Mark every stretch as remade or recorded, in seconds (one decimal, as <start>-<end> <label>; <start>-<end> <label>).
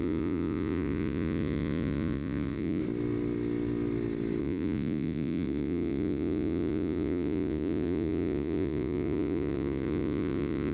0.0-2.8 remade; 2.8-4.4 recorded; 4.4-10.7 remade